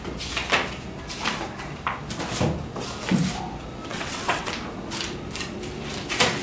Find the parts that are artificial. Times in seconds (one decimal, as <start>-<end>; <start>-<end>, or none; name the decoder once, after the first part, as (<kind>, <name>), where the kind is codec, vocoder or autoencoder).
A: 3.9-4.5 (vocoder, WaveNeXt)